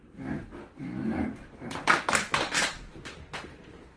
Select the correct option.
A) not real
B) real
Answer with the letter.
B